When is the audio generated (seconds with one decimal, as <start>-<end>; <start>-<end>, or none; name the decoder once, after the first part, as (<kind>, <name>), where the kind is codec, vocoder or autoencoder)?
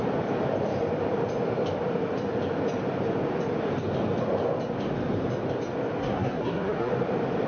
6.0-6.9 (codec, SNAC)